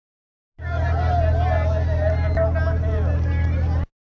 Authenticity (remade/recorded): recorded